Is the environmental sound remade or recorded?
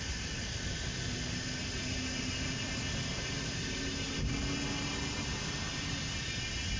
recorded